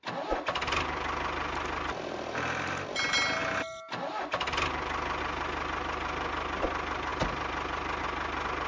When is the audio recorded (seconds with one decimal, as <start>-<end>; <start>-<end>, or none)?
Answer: 0.0-8.7